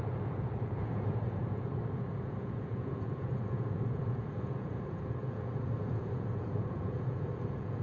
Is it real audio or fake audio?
fake